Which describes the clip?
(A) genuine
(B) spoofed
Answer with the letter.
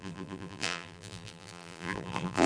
B